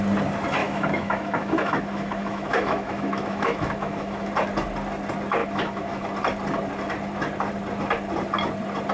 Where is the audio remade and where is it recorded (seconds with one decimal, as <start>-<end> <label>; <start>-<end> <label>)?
0.0-0.6 recorded; 0.6-4.3 remade; 4.3-5.4 recorded; 5.4-6.0 remade; 6.0-8.9 recorded